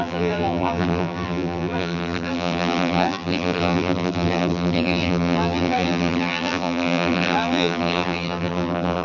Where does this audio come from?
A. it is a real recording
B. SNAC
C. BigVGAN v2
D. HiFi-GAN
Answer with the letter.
C